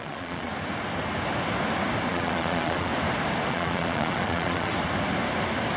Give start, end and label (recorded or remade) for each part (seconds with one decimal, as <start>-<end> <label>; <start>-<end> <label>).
0.0-0.5 remade; 0.5-2.1 recorded; 2.1-2.9 remade; 2.9-3.5 recorded; 3.5-4.7 remade; 4.7-5.8 recorded